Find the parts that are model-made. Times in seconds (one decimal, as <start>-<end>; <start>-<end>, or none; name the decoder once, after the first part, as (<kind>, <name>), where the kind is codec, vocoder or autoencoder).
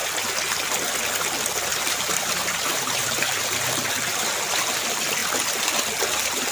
1.7-3.7 (vocoder, BigVGAN v2)